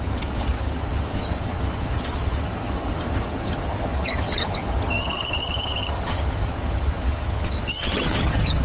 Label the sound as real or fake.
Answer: fake